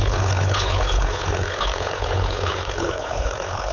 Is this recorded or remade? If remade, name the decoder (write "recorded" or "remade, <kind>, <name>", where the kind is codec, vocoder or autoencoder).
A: remade, codec, HILCodec